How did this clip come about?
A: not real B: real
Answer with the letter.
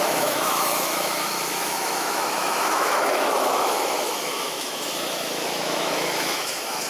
A